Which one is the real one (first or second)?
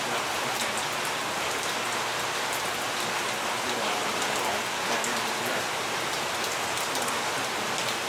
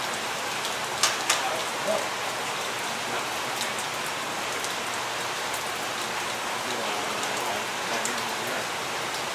first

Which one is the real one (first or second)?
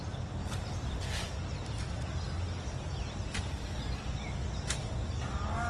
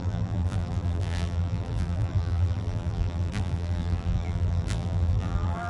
first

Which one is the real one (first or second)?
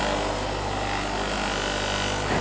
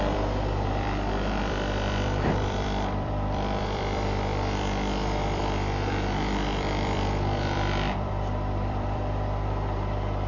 first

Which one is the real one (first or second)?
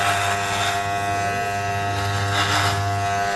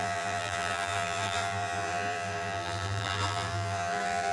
first